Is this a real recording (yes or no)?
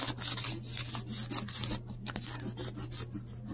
yes